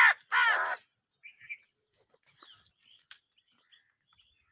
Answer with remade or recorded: recorded